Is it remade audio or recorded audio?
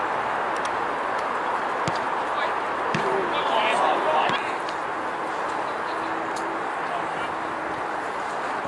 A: recorded